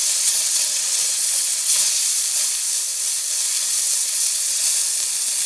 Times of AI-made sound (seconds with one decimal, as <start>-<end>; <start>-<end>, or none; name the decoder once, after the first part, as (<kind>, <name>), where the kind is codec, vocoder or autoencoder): 0.0-1.9 (vocoder, WaveNeXt); 4.0-4.6